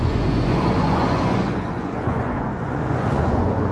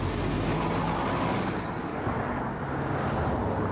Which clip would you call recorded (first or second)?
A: second